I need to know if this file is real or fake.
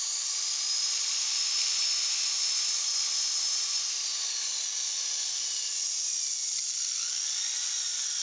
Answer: real